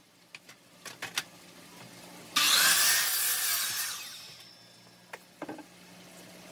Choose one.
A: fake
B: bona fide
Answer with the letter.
B